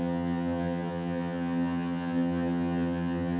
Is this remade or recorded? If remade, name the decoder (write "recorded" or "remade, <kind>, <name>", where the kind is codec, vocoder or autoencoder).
remade, vocoder, HiFi-GAN